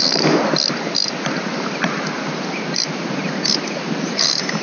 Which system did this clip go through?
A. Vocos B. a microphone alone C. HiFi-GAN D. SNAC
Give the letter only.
B